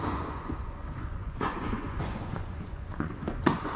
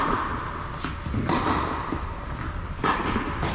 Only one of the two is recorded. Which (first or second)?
second